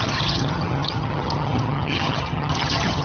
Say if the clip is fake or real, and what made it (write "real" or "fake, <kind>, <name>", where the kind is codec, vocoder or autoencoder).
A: fake, vocoder, HiFi-GAN